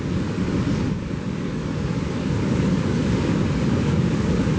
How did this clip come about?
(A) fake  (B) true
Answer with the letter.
A